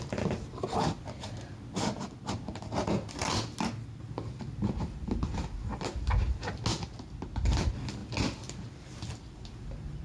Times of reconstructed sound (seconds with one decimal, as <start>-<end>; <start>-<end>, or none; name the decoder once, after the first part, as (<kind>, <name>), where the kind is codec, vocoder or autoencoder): none

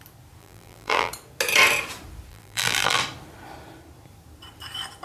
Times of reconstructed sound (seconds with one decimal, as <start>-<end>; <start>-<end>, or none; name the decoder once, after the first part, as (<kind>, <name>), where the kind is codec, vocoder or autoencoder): 0.4-1.1 (vocoder, BigVGAN v2); 2.3-3.0

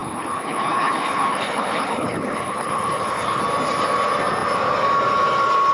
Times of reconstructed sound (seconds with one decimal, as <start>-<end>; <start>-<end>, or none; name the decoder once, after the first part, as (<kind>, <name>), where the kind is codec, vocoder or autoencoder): 0.0-3.4 (codec, HILCodec)

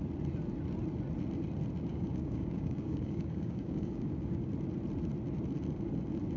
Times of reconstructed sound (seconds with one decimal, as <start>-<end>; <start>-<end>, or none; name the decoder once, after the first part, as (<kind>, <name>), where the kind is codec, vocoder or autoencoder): 1.9-4.5 (codec, DAC)

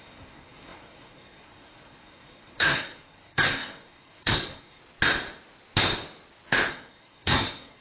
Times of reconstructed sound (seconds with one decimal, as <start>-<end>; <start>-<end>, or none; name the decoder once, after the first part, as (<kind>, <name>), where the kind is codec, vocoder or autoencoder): 0.0-4.8 (codec, SNAC); 6.7-7.8

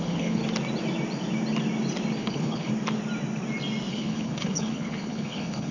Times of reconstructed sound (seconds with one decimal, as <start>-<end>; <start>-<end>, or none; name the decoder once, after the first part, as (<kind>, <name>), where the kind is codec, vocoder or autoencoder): 0.0-0.4 (codec, HILCodec); 2.2-2.7; 3.9-5.7